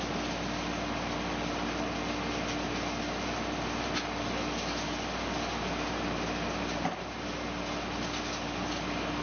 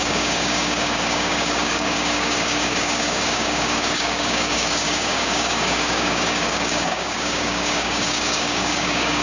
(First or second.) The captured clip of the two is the first